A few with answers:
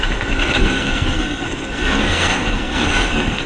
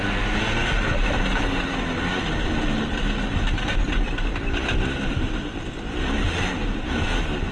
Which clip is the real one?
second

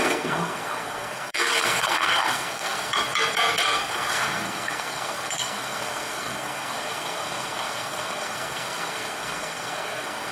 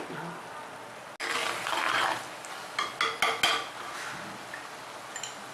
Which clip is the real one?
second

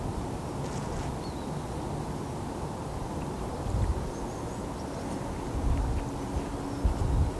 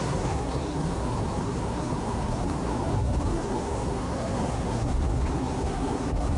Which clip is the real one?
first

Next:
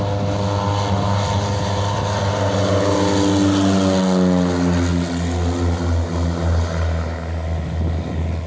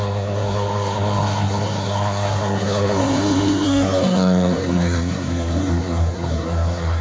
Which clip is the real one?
first